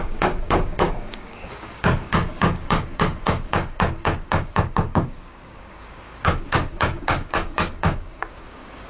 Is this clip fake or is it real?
fake